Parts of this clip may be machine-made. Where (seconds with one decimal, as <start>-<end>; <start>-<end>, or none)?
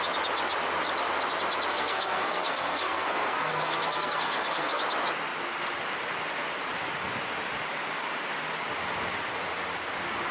1.7-4.8